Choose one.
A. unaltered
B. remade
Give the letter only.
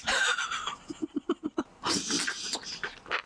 A